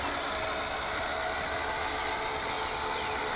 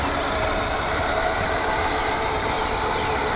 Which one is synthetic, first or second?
second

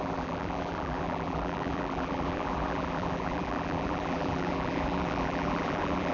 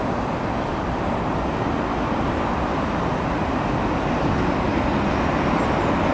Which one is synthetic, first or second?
first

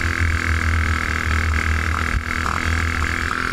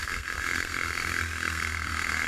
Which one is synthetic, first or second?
second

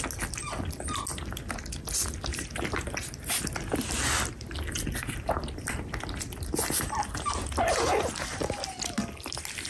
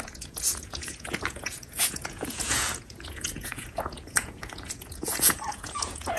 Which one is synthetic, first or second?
second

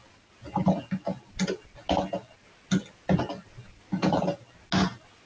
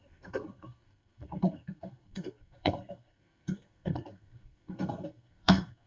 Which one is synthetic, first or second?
second